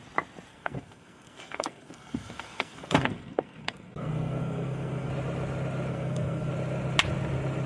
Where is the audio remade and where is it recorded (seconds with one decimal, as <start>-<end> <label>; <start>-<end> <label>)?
0.0-0.5 recorded; 0.5-5.1 remade; 5.1-5.9 recorded; 5.9-6.5 remade; 6.5-7.7 recorded